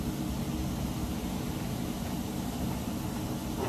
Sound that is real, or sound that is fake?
real